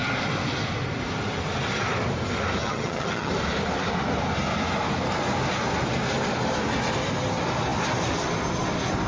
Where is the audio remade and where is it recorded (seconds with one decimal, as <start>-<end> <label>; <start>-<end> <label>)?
0.0-2.6 recorded; 2.6-3.3 remade; 3.3-9.1 recorded